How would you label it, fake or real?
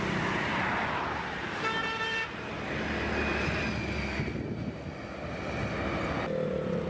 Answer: real